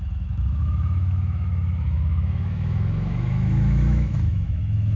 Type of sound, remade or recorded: remade